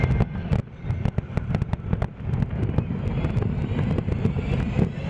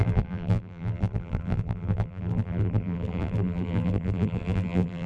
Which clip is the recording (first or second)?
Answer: first